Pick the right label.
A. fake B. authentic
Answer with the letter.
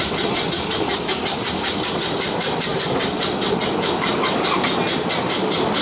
B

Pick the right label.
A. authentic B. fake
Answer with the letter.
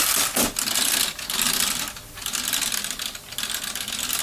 A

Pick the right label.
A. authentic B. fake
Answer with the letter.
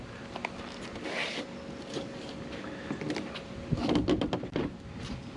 A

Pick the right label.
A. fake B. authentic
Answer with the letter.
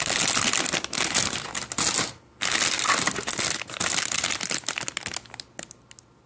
B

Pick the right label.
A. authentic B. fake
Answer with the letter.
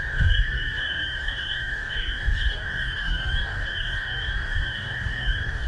B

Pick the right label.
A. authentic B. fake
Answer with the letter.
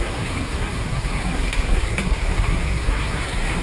B